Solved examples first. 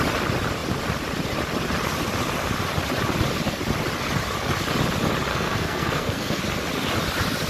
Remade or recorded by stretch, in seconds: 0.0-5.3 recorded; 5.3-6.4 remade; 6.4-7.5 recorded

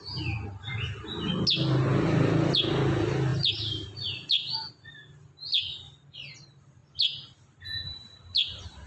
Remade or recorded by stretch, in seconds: 0.0-8.9 recorded

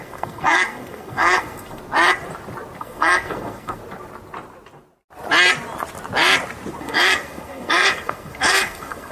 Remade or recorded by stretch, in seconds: 0.0-1.8 remade; 1.8-2.8 recorded; 2.8-3.8 remade; 3.8-6.8 recorded; 6.8-9.1 remade